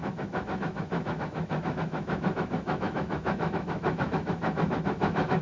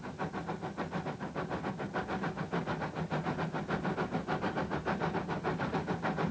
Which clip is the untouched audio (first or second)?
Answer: second